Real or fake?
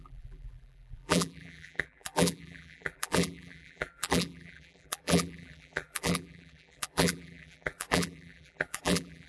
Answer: fake